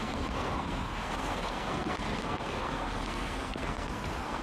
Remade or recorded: remade